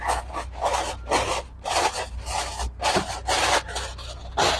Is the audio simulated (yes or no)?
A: no